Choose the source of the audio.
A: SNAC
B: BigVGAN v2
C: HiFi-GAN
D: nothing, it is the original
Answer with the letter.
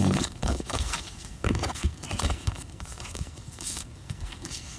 A